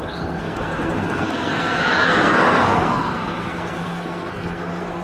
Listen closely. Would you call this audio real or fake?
fake